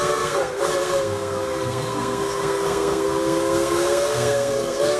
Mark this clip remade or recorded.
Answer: remade